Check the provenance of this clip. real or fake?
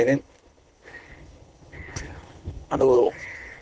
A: fake